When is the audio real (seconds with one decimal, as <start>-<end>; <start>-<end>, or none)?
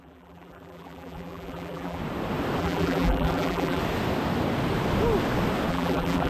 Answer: 2.0-2.6; 3.8-5.7